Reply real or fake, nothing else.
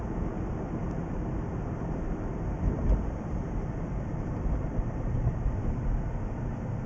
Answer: real